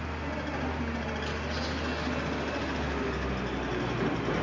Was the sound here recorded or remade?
recorded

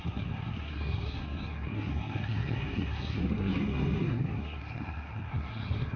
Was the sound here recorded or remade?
remade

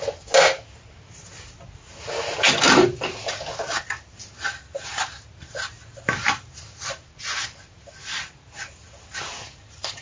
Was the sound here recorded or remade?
recorded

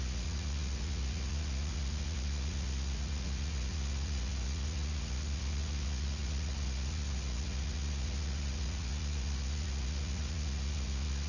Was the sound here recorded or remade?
remade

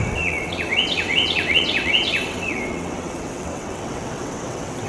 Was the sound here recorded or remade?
remade